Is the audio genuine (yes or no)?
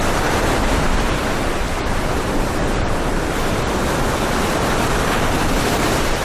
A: yes